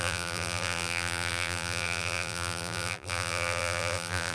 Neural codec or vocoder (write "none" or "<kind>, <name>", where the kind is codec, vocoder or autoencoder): vocoder, BigVGAN v2